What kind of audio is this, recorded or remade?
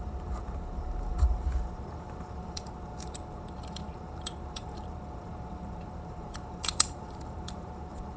remade